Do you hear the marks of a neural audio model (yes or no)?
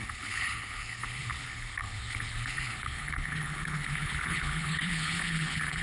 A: yes